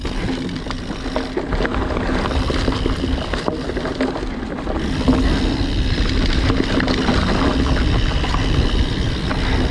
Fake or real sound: real